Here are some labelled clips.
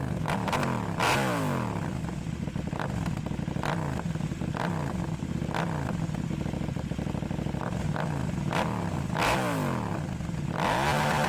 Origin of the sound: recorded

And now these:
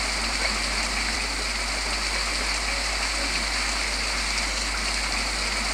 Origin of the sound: recorded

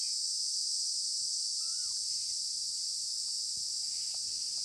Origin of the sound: recorded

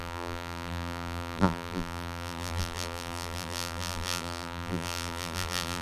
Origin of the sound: remade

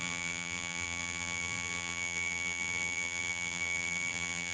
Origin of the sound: remade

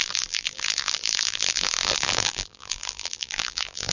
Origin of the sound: remade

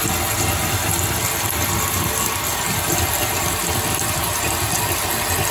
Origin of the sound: recorded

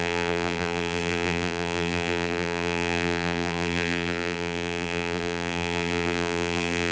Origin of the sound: remade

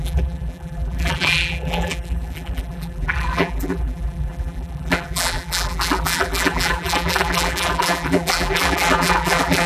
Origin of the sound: remade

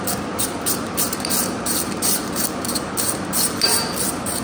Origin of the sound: remade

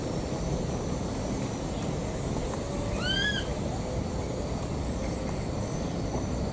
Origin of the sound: recorded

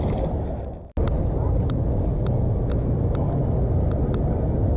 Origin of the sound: recorded